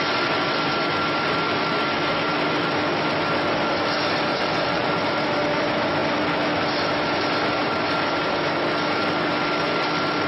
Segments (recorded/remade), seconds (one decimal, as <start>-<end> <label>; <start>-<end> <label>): 0.0-4.3 recorded; 4.3-4.9 remade; 4.9-10.3 recorded